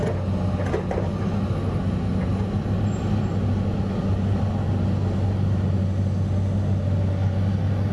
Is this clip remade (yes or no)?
no